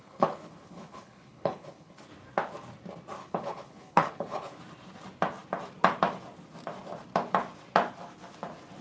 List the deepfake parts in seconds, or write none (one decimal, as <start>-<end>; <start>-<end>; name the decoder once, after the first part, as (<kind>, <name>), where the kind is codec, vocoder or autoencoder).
0.0-2.0 (codec, HILCodec); 3.2-4.6